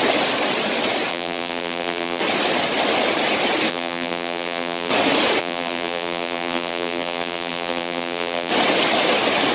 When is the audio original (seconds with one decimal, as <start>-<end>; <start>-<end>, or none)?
0.0-1.1; 2.2-3.7; 4.9-5.4; 8.5-9.5